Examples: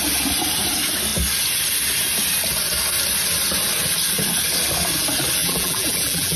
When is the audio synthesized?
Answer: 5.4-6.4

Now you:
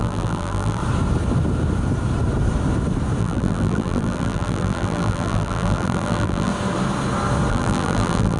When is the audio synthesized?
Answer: 0.0-0.8; 3.2-6.5; 7.5-8.4

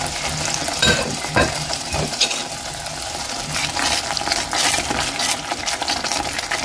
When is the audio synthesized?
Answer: 0.6-2.3

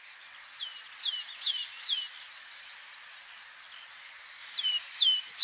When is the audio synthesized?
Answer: 4.4-4.9

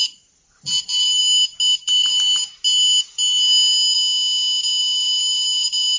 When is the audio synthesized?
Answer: 0.0-1.2; 4.8-6.0

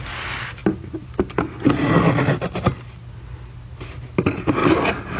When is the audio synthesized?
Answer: 0.6-1.2; 4.6-5.2

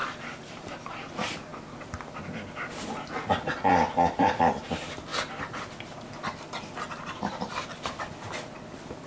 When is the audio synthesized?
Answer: 0.0-1.1; 3.7-4.3